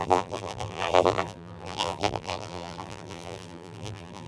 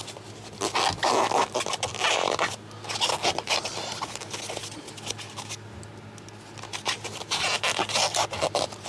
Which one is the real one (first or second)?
second